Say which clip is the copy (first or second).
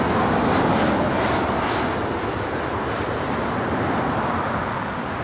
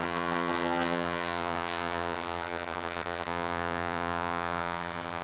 second